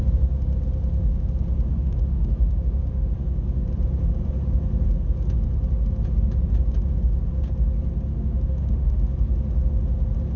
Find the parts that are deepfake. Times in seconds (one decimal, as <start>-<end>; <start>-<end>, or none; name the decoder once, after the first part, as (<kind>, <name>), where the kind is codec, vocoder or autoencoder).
1.7-3.1 (autoencoder, DAC-VAE); 8.1-9.0